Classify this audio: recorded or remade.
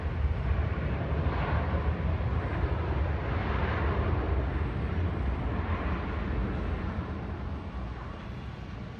recorded